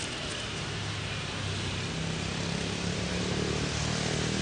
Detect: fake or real real